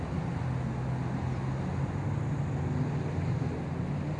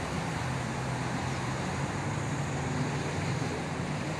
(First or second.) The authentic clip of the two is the first